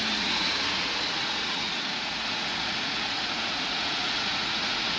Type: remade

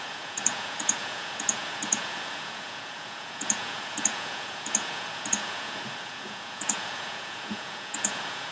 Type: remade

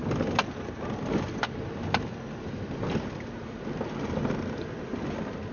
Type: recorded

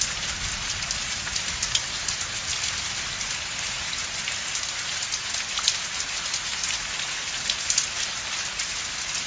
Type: recorded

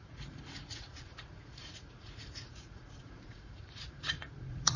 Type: remade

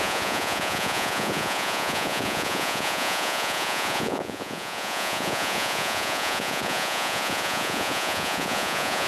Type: remade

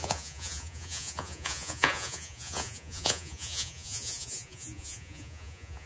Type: remade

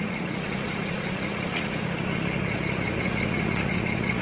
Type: remade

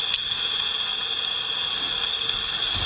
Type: recorded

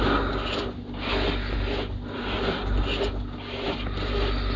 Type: recorded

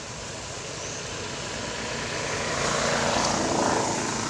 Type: recorded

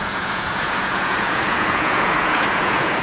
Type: remade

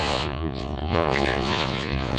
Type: remade